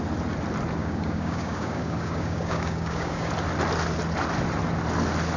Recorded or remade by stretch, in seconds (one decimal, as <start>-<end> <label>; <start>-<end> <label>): 0.0-0.8 recorded; 0.8-3.3 remade; 3.3-5.4 recorded